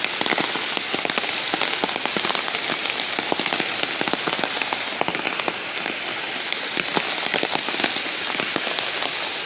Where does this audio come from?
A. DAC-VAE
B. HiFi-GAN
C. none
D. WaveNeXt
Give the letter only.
C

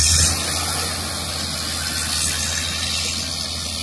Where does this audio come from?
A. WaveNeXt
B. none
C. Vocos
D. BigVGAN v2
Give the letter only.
B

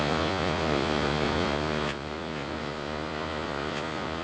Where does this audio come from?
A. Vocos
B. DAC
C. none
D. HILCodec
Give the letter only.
A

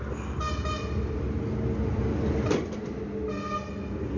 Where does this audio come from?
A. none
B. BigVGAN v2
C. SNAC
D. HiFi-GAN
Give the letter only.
A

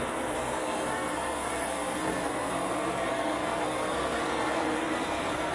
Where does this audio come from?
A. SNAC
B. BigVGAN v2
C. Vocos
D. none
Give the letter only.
A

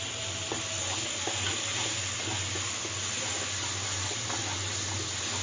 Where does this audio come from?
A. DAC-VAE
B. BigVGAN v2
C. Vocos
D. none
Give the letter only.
D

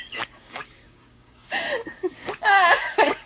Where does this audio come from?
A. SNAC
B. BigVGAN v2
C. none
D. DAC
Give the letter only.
D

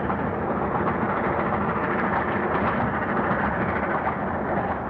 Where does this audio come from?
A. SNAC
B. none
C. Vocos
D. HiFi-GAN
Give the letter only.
B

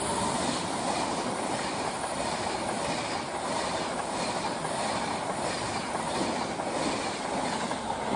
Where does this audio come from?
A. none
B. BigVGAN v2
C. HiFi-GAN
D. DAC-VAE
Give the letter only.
B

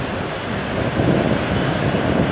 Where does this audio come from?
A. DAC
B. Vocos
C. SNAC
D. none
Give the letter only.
D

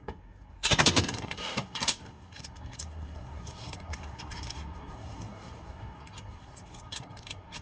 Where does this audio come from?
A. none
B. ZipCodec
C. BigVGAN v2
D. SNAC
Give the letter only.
D